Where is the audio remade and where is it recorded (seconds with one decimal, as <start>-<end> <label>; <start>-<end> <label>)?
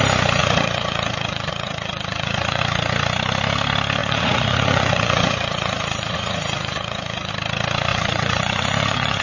0.0-0.4 recorded; 0.4-2.6 remade; 2.6-4.0 recorded; 4.0-7.3 remade; 7.3-7.9 recorded; 7.9-9.2 remade